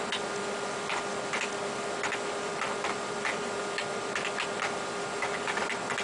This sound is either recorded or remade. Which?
recorded